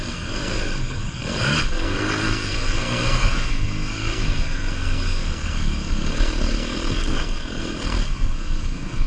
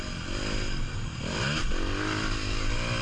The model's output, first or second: first